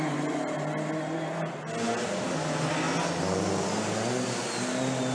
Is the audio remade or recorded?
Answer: recorded